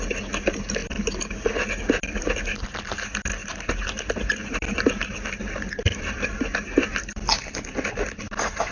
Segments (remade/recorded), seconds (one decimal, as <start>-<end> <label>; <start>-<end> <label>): 0.0-8.7 recorded